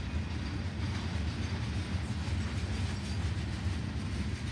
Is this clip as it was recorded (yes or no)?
yes